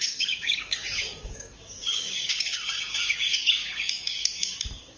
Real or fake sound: fake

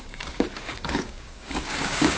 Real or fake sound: fake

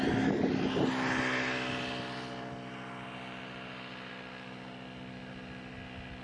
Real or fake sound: real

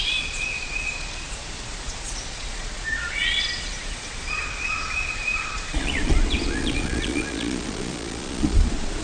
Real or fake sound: fake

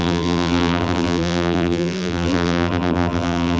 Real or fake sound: fake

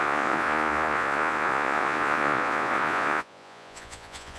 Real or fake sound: fake